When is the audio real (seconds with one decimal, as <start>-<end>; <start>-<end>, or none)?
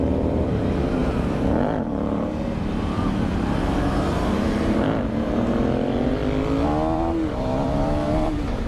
6.2-7.3